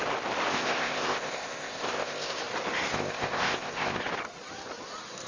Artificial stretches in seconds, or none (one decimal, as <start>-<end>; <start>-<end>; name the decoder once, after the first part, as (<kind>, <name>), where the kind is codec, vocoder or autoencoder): 0.5-2.4 (codec, ZipCodec); 2.9-4.0